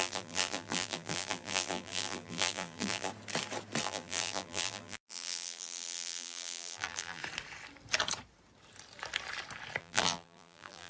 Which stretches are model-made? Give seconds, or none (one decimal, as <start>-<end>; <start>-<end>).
0.0-3.1; 3.8-7.2; 9.8-10.9